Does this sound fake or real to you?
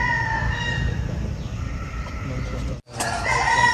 real